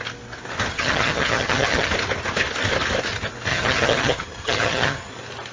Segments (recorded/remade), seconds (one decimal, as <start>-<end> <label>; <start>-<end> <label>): 0.0-0.7 recorded; 0.7-1.9 remade; 1.9-3.5 recorded; 3.5-5.1 remade; 5.1-5.5 recorded